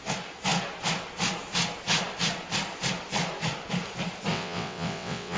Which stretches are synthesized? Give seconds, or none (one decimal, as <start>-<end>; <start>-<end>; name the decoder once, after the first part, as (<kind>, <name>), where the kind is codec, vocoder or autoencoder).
4.3-5.4 (vocoder, WaveNeXt)